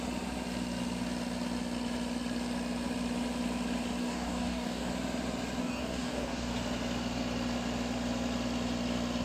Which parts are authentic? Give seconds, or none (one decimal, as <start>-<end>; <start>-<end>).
0.0-4.0; 4.9-5.6; 6.5-9.2